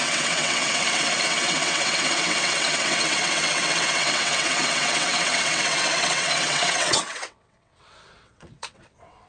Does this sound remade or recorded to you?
remade